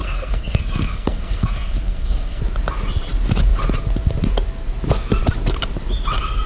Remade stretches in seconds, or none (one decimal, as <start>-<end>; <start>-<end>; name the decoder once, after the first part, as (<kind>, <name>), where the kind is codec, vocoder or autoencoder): 0.0-2.4 (codec, SNAC)